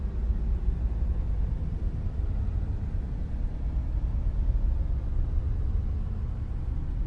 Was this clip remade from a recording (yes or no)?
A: no